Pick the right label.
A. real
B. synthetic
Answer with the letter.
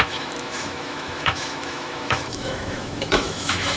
B